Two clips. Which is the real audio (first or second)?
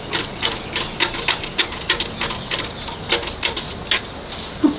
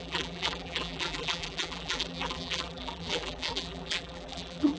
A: first